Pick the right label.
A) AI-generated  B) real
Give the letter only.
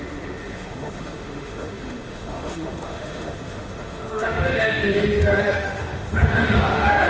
A